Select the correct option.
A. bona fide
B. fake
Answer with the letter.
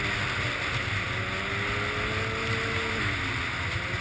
A